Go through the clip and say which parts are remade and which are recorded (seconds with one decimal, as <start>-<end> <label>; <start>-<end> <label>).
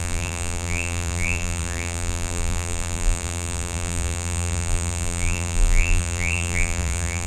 0.0-7.3 remade